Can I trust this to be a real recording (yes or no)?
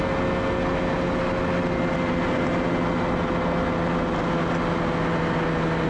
yes